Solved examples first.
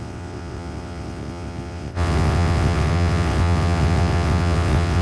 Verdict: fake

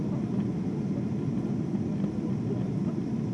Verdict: real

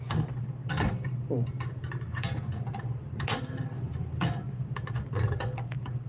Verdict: fake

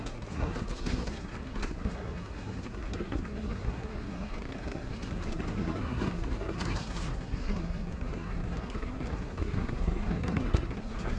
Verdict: fake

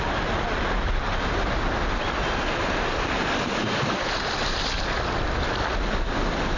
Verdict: real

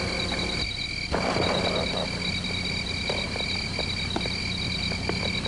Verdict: real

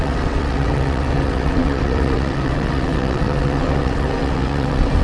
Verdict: fake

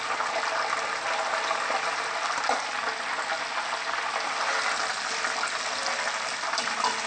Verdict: real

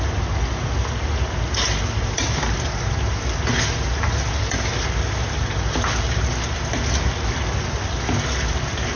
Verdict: real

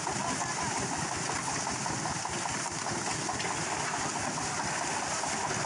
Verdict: real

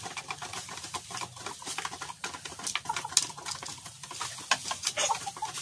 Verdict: real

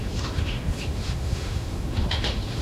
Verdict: fake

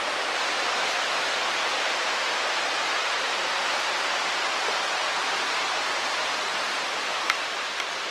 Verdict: real